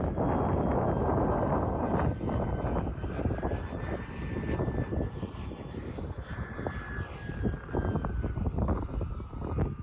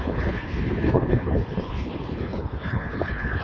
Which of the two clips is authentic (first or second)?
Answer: first